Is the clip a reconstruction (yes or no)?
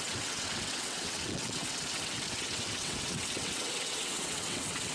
yes